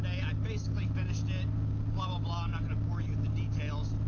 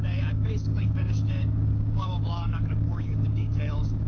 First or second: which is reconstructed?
second